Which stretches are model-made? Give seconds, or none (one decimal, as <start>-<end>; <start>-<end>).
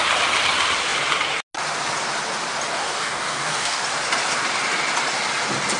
2.7-3.8